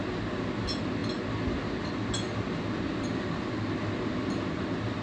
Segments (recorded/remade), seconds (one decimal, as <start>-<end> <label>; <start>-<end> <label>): 0.0-5.0 recorded